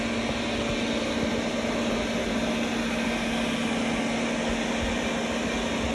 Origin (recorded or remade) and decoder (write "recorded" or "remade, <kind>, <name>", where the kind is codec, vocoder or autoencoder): recorded